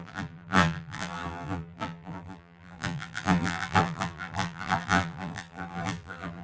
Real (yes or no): no